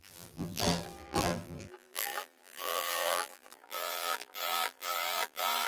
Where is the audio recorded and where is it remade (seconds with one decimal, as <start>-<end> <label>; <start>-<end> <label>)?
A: 0.0-5.7 remade